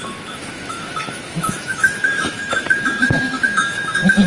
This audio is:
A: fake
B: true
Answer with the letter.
A